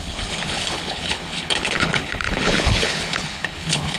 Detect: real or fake fake